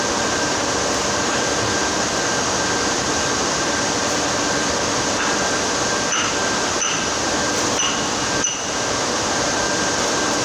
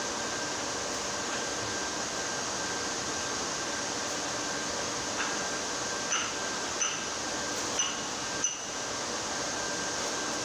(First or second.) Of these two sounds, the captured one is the second